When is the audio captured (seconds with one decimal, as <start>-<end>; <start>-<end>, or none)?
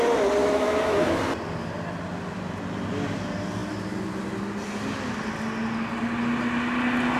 0.0-0.4; 1.2-7.2